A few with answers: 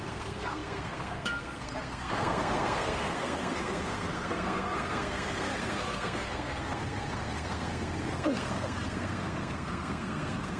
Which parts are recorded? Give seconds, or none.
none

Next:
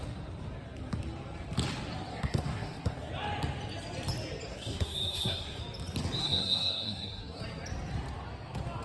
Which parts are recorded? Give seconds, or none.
0.0-2.1; 3.1-4.5; 5.6-6.2; 7.4-8.8

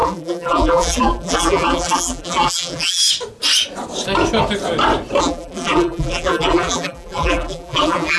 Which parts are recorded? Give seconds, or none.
3.0-5.2

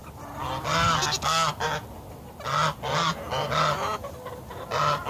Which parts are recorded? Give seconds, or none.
0.0-5.1

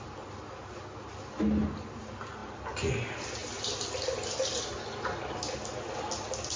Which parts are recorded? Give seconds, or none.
0.0-6.6

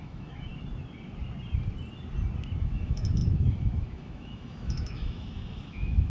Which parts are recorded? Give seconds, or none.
0.5-2.6

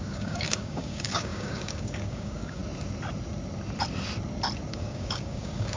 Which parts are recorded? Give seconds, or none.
2.6-4.7

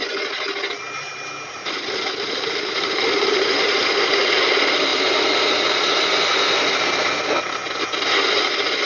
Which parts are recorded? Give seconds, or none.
0.0-8.8